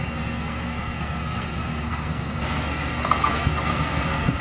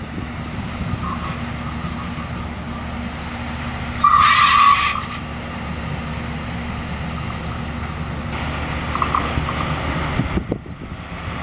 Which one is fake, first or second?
first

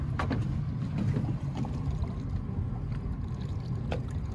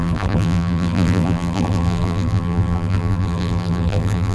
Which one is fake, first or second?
second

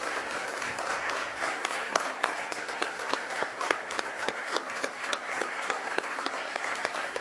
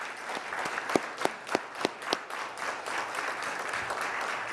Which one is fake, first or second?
first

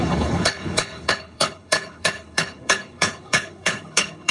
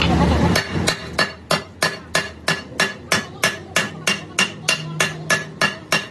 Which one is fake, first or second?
first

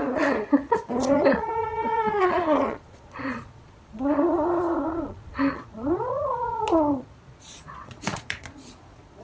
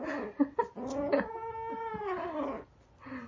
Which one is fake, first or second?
first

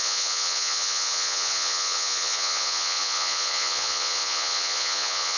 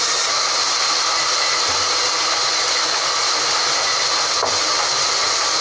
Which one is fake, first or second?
first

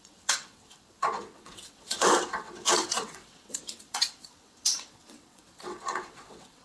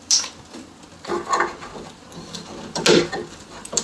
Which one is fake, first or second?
first